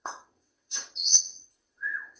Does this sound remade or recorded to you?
remade